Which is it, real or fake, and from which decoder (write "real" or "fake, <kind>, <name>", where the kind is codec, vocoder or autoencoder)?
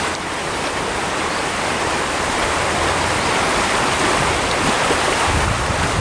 fake, vocoder, BigVGAN v2